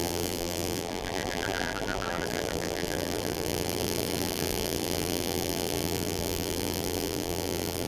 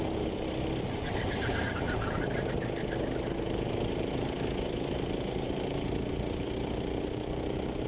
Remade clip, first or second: first